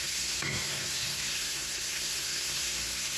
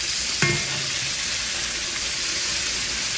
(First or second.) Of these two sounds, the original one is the second